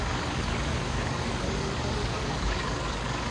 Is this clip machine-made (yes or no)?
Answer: yes